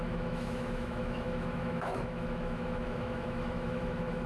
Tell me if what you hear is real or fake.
fake